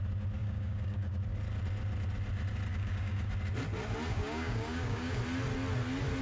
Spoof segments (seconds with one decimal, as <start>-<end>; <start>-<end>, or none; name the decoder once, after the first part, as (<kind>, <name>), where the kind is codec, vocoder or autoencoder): 0.4-1.1 (codec, DAC); 2.7-3.3; 4.1-5.2